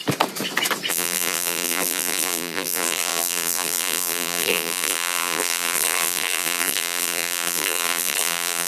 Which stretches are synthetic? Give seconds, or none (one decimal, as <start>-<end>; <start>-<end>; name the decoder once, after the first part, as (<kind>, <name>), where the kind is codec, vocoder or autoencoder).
0.9-8.7 (vocoder, BigVGAN v2)